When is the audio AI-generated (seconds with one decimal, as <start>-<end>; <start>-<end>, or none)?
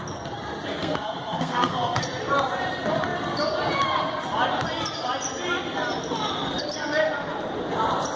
0.8-2.0